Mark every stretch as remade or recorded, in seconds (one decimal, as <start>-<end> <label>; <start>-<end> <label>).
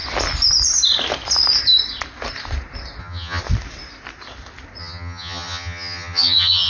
0.0-3.0 recorded; 3.0-3.4 remade; 3.4-4.8 recorded; 4.8-6.7 remade